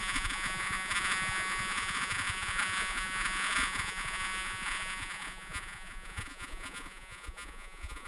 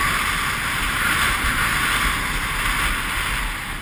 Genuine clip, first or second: second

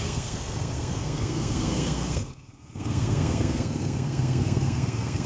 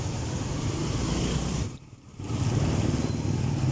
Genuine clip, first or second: second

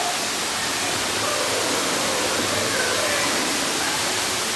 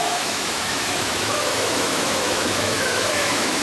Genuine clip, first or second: first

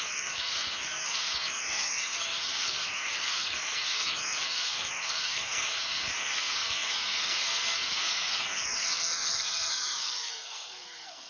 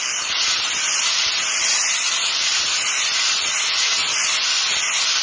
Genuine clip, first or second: second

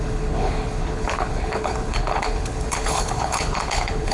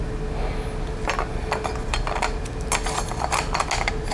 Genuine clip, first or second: second